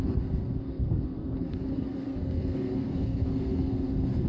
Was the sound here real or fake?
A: fake